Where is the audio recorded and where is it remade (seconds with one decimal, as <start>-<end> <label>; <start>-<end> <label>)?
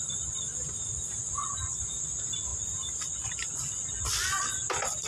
0.0-5.1 recorded